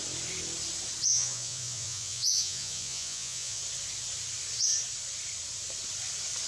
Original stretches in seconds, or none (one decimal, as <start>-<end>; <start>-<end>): 0.0-1.1; 3.6-6.5